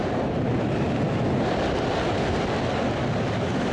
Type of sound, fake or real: real